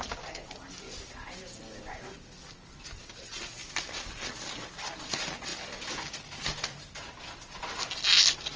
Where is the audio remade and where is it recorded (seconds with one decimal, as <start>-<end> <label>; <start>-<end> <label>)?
0.0-5.5 recorded; 5.5-7.2 remade; 7.2-8.6 recorded